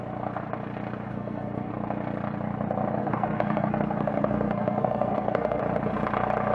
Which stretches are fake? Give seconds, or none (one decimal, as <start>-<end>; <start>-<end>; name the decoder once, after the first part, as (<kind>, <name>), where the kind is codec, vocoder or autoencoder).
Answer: 1.1-1.7 (codec, SNAC); 3.0-5.6